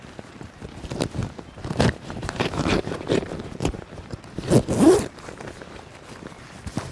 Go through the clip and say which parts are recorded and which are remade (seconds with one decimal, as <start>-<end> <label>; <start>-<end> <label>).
0.0-1.2 recorded; 1.2-4.5 remade; 4.5-6.9 recorded

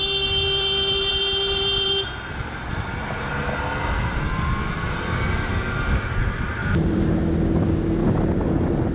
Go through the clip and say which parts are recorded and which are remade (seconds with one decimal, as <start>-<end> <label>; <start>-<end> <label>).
0.0-1.1 recorded; 1.1-3.3 remade; 3.3-6.6 recorded; 6.6-7.2 remade; 7.2-8.0 recorded; 8.0-8.9 remade

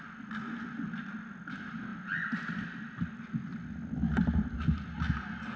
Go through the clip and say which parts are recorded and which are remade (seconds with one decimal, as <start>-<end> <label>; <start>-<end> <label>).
0.0-5.6 recorded

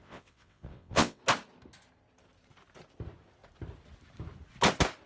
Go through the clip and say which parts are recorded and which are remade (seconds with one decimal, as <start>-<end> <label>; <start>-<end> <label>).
0.0-1.2 remade; 1.2-5.1 recorded

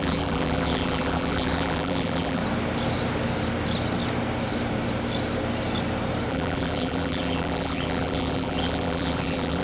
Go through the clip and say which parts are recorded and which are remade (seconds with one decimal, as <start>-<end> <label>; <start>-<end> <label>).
0.0-2.4 remade; 2.4-6.3 recorded; 6.3-9.6 remade